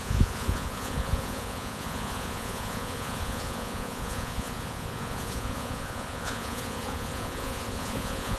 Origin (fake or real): fake